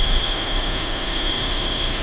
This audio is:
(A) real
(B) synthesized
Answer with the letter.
B